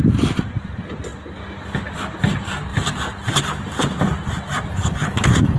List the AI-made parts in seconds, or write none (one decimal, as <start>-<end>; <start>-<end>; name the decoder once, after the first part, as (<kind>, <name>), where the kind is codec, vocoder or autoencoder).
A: 4.7-5.6 (codec, HILCodec)